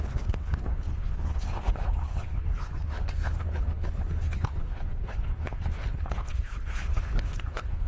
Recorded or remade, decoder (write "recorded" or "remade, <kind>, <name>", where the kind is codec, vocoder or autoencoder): remade, codec, HILCodec